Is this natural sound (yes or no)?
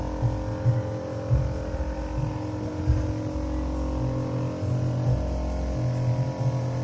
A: yes